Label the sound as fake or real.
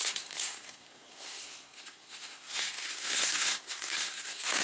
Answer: fake